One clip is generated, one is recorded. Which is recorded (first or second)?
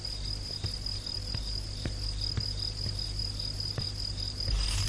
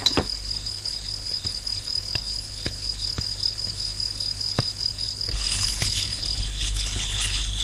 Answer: first